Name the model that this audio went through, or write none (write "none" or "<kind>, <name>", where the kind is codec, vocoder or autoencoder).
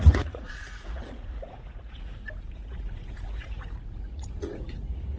vocoder, Vocos